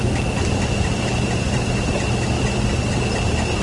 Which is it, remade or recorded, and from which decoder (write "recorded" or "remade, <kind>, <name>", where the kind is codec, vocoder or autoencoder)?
recorded